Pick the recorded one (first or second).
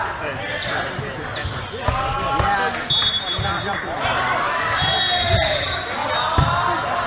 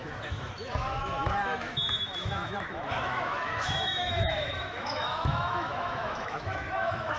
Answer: first